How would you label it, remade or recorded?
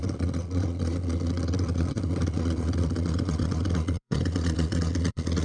remade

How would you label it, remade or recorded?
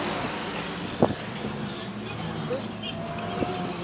recorded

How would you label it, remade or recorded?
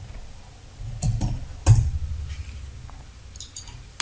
recorded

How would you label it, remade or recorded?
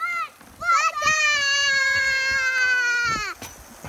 recorded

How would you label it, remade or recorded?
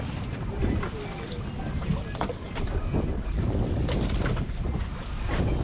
recorded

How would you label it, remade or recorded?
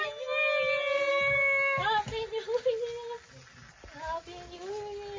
recorded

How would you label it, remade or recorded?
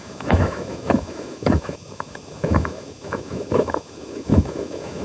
remade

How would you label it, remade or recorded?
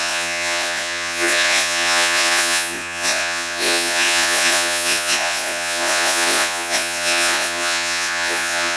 remade